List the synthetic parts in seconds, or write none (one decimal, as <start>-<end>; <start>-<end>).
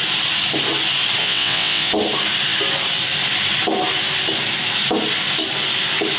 1.2-1.9